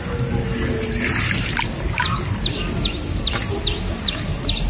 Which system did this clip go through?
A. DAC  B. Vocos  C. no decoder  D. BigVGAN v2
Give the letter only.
C